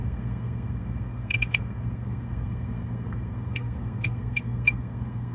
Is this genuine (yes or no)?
no